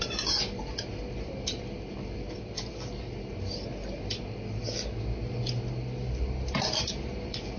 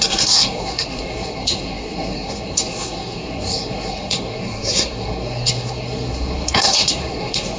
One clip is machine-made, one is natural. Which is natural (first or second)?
first